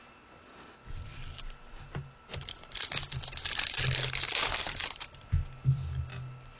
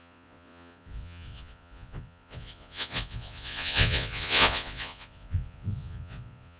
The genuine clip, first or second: first